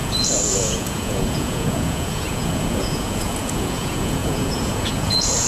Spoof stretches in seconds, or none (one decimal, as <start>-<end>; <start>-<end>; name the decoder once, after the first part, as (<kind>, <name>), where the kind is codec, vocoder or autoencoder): 0.0-5.5 (vocoder, Vocos)